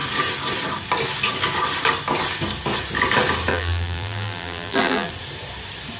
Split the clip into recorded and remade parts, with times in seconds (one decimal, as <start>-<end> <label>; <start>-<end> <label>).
0.0-3.5 recorded; 3.5-5.1 remade; 5.1-6.0 recorded